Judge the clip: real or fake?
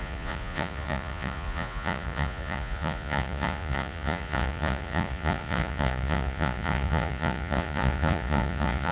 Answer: fake